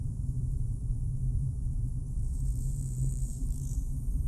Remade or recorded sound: remade